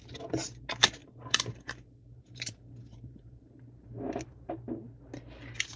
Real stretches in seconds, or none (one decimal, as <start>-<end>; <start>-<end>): 0.0-1.0; 4.5-5.8